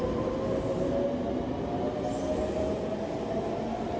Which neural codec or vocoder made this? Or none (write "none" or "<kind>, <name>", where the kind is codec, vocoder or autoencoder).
none